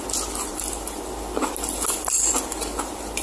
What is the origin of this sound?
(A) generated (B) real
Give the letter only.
B